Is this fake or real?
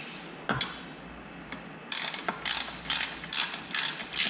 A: real